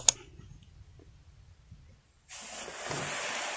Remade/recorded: recorded